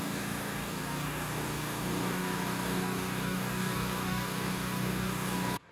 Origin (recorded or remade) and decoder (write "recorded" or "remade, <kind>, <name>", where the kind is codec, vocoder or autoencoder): remade, codec, DAC